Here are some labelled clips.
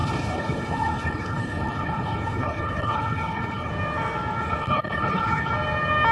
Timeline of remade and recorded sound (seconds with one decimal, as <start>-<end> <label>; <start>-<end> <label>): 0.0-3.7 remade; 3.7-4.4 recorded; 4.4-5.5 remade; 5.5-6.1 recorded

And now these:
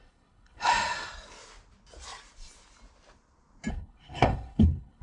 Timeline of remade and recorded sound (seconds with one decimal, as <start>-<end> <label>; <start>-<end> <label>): 0.0-0.7 remade; 0.7-3.7 recorded; 3.7-5.0 remade

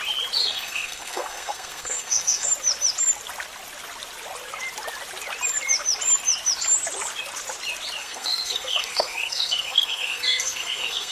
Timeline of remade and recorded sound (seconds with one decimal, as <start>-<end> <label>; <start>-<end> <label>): 0.0-0.4 recorded; 0.4-2.5 remade; 2.5-8.0 recorded; 8.0-11.1 remade